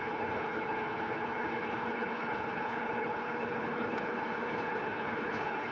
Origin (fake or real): fake